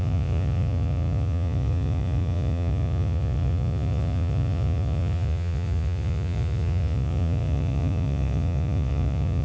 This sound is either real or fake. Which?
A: fake